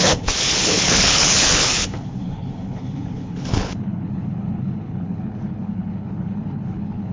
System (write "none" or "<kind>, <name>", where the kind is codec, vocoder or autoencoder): codec, HILCodec